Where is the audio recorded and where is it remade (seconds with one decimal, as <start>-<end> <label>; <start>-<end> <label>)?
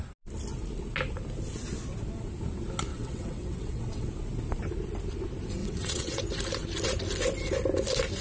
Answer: 0.0-2.9 recorded; 2.9-4.1 remade; 4.1-5.6 recorded; 5.6-6.2 remade; 6.2-8.2 recorded